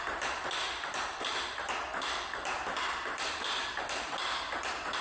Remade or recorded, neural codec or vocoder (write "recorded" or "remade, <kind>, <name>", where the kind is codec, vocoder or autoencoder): recorded